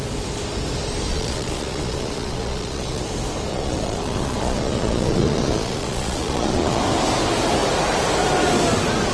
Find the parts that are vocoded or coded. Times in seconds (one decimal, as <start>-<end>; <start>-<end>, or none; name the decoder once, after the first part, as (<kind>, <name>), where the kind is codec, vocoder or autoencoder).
1.1-3.0 (vocoder, Vocos); 3.5-6.8